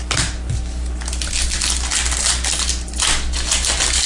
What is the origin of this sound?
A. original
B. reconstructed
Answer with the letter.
A